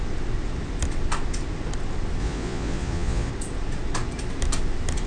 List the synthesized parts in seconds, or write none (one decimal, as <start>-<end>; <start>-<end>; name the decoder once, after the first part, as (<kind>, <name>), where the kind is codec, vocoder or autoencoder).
2.2-3.3 (vocoder, Vocos)